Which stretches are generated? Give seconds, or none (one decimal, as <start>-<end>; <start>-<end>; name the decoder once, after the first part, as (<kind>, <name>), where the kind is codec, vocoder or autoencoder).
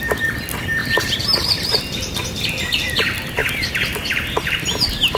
0.8-1.5 (vocoder, BigVGAN v2); 3.4-4.6